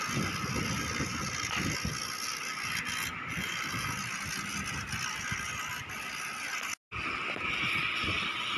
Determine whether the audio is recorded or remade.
recorded